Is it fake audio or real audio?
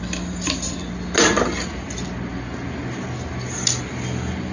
real